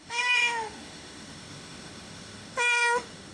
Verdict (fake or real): fake